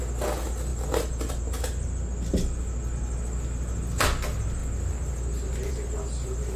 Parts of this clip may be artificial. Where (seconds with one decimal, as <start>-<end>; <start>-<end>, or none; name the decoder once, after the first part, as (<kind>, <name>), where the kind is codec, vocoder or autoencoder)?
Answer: none